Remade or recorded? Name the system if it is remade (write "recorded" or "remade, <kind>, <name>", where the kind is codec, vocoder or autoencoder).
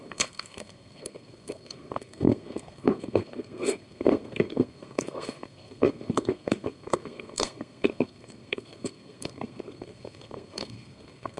remade, codec, SNAC